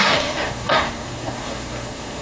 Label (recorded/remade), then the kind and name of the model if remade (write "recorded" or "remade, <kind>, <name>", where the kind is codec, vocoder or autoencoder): remade, codec, SNAC